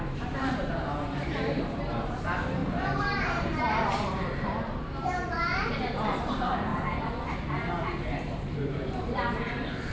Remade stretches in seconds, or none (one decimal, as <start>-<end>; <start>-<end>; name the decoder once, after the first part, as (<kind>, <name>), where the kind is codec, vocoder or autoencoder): 0.0-6.7 (vocoder, BigVGAN v2); 8.0-9.9